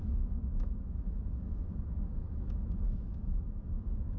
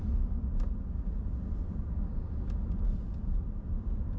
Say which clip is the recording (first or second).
second